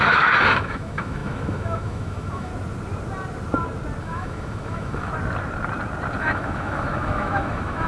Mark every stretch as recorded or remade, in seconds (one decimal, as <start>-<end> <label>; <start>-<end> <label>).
0.0-2.5 remade; 2.5-4.0 recorded; 4.0-5.1 remade; 5.1-6.2 recorded; 6.2-7.9 remade